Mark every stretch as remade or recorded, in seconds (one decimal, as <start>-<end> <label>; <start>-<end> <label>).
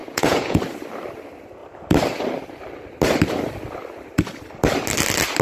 0.0-0.6 remade; 0.6-5.4 recorded